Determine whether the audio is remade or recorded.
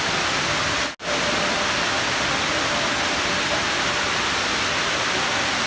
recorded